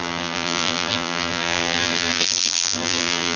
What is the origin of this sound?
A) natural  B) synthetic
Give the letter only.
B